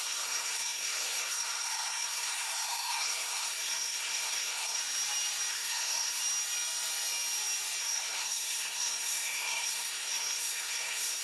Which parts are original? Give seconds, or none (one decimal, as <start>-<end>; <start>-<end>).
4.8-5.5; 6.2-7.8